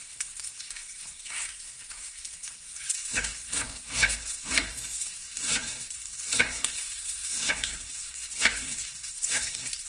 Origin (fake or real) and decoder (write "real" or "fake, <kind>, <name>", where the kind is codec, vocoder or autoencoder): fake, codec, SNAC